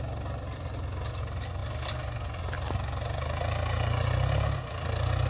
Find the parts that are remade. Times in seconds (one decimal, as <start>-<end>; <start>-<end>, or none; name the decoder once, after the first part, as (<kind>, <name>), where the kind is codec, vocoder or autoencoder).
none